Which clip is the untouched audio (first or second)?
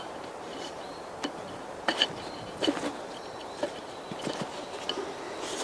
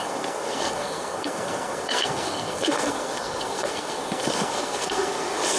first